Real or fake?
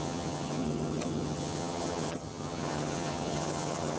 fake